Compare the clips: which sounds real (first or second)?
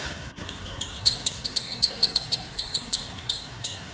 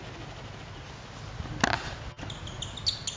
second